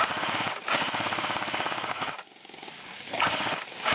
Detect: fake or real fake